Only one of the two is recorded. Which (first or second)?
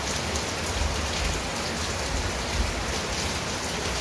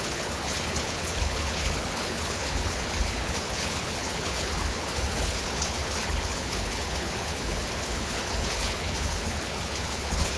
first